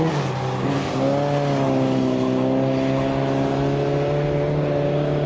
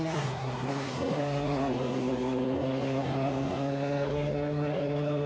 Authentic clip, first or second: first